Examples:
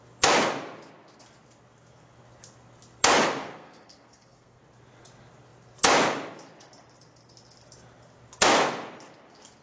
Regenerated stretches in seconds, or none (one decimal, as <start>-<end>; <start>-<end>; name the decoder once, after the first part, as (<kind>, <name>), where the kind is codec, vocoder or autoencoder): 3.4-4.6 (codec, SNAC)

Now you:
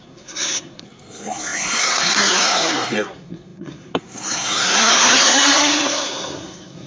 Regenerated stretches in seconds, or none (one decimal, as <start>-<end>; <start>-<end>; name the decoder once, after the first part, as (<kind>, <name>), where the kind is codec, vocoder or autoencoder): 0.0-6.9 (codec, SNAC)

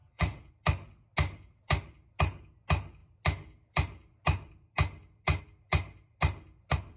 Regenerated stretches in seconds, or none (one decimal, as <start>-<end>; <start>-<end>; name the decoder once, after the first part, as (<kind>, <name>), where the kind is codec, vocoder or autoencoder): 0.0-0.5 (vocoder, Vocos)

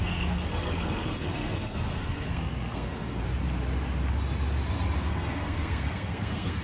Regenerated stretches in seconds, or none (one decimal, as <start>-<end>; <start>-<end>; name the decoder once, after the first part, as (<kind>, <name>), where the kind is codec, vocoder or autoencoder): 0.0-3.2 (codec, SNAC); 5.1-6.6

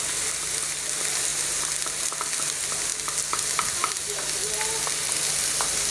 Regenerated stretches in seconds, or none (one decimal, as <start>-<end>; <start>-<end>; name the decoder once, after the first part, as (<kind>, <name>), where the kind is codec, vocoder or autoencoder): none